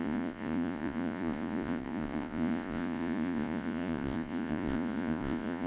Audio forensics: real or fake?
fake